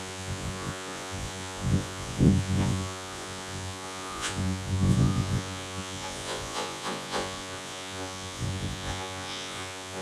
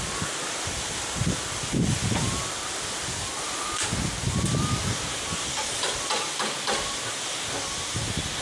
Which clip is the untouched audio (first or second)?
second